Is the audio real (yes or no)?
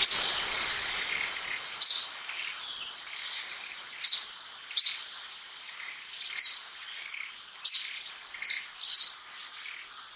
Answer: yes